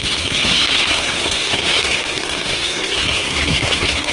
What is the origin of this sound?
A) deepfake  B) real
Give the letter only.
A